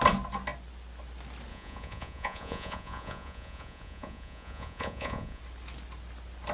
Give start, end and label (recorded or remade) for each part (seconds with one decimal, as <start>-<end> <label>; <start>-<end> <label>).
0.0-1.5 recorded; 1.5-5.4 remade; 5.4-6.5 recorded